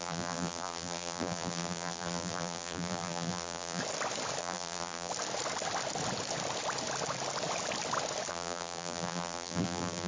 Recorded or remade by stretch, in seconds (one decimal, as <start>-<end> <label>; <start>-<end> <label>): 0.0-3.8 remade; 3.8-4.4 recorded; 4.4-5.1 remade; 5.1-8.3 recorded; 8.3-10.1 remade

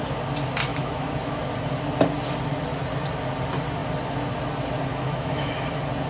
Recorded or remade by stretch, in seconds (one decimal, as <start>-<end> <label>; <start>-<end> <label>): 0.0-0.7 recorded; 0.7-1.4 remade; 1.4-4.9 recorded; 4.9-5.5 remade; 5.5-6.1 recorded

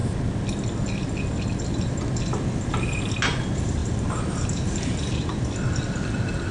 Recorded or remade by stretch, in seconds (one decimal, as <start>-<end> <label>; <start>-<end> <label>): 0.0-3.8 recorded; 3.8-5.0 remade; 5.0-6.5 recorded

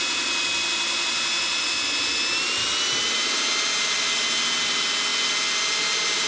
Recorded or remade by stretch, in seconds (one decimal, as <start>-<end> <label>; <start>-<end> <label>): 0.0-6.3 recorded

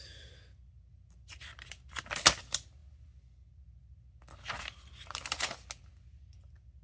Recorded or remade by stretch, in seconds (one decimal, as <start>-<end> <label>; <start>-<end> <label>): 0.0-6.8 recorded

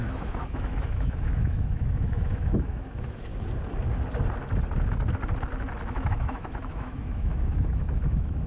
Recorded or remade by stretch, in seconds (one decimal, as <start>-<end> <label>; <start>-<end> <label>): 0.0-3.3 remade; 3.3-5.9 recorded; 5.9-8.5 remade

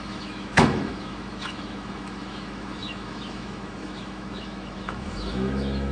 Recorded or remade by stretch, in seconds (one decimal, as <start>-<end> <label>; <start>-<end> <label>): 0.0-5.9 remade